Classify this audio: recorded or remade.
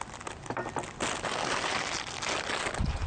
recorded